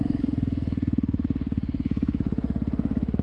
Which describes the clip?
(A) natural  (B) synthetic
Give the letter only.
B